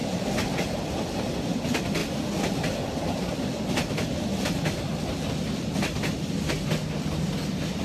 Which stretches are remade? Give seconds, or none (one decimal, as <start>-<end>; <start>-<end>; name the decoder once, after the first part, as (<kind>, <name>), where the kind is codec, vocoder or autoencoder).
none